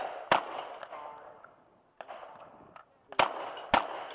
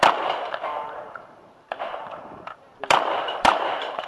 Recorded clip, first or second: first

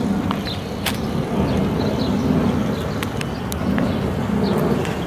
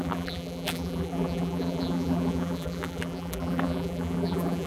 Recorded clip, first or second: first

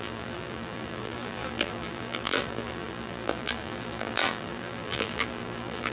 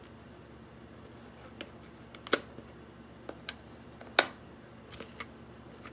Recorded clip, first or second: second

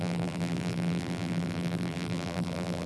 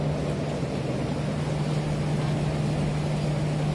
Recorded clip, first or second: second